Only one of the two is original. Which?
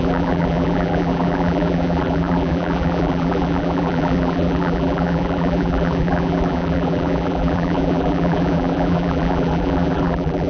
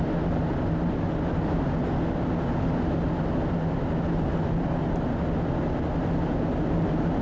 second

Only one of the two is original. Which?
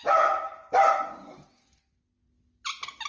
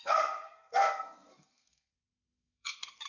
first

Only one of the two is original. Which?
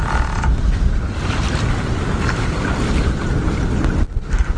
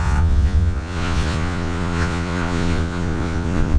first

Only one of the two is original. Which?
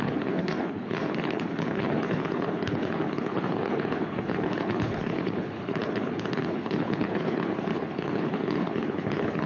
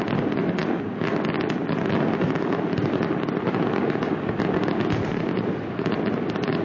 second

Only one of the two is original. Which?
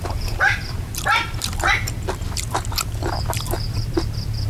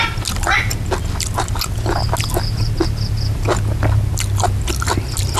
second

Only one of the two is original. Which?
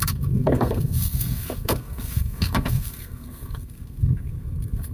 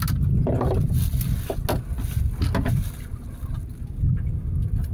second